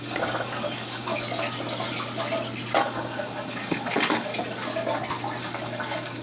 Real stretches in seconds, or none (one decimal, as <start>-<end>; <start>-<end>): 1.1-2.8; 4.3-5.4